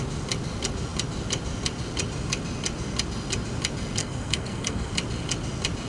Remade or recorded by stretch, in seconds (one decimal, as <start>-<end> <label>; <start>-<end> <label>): 0.0-4.0 recorded; 4.0-4.9 remade; 4.9-5.9 recorded

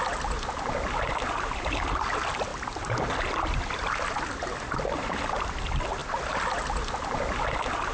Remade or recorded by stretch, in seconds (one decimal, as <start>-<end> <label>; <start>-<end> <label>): 0.0-7.9 recorded

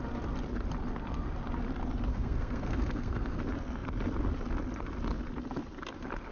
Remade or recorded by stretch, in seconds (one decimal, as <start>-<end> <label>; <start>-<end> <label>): 0.0-2.1 recorded; 2.1-3.4 remade; 3.4-6.3 recorded

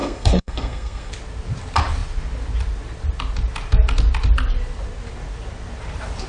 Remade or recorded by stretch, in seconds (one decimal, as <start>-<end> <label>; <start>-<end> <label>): 0.0-1.1 remade; 1.1-6.3 recorded

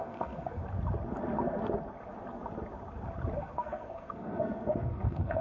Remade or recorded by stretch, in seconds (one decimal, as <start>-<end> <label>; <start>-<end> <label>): 0.0-0.6 remade; 0.6-3.4 recorded; 3.4-5.4 remade

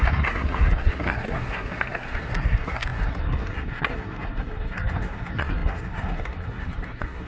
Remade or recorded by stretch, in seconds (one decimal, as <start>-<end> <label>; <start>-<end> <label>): 0.0-7.3 remade

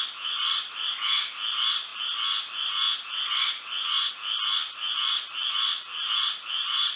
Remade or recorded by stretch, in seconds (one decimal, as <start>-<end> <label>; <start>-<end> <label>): 0.0-7.0 recorded

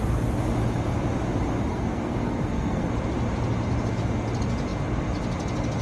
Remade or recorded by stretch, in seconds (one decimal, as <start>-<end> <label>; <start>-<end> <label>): 0.0-1.7 recorded; 1.7-2.9 remade; 2.9-5.8 recorded